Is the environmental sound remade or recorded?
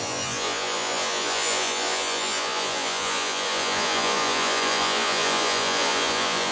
remade